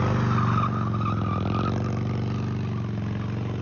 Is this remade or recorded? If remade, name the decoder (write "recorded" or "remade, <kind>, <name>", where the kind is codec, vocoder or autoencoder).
recorded